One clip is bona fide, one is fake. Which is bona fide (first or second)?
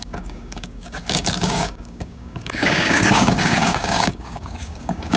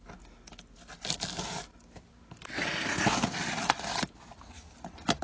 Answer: second